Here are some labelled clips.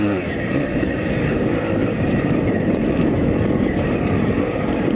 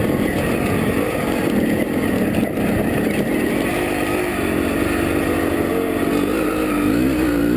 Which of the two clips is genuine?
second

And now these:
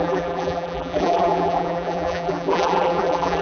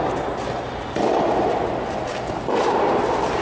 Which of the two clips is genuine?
second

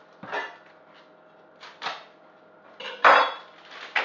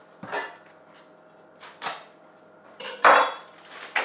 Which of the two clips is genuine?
first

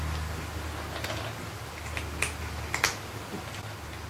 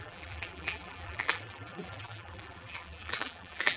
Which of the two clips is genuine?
first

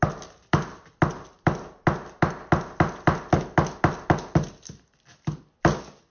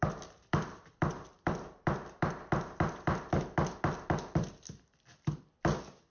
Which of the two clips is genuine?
first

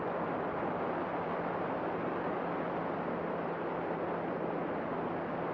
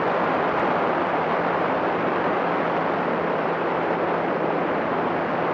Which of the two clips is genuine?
first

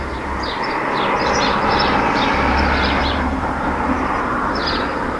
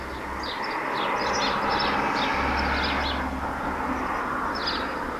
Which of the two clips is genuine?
second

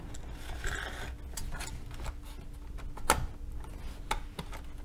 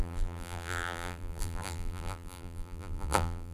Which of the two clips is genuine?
first